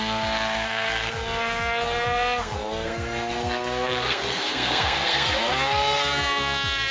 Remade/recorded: remade